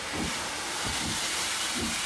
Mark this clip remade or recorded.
remade